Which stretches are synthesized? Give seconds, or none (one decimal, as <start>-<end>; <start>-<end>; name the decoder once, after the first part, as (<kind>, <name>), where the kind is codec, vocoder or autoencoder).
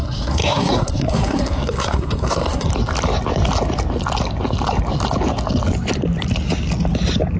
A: 0.0-2.7 (codec, SNAC)